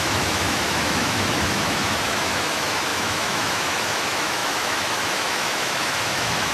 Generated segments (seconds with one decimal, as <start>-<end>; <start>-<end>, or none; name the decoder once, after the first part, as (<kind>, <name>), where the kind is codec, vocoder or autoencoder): 0.0-6.5 (autoencoder, DAC-VAE)